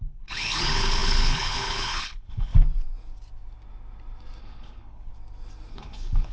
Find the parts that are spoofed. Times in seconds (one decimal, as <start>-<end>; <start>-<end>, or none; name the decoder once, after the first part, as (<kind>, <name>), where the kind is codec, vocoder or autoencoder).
0.0-2.5 (codec, HILCodec); 4.4-5.1; 5.7-6.3